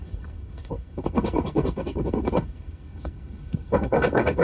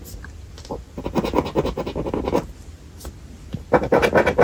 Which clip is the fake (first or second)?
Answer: first